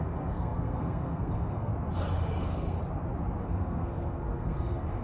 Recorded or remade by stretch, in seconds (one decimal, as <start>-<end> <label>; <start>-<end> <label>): 0.0-1.7 remade; 1.7-2.4 recorded; 2.4-2.8 remade; 2.8-3.4 recorded; 3.4-5.0 remade